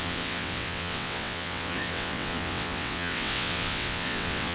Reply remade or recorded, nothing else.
remade